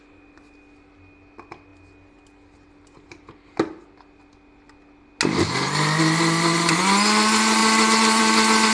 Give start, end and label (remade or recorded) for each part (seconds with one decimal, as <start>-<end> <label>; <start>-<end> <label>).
0.0-8.7 recorded